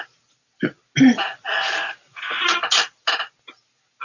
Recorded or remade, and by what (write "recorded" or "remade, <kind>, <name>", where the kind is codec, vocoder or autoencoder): recorded